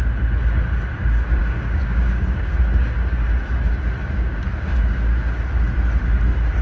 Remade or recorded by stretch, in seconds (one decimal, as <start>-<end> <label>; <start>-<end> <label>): 0.0-1.4 recorded; 1.4-2.5 remade; 2.5-4.0 recorded; 4.0-5.4 remade; 5.4-6.6 recorded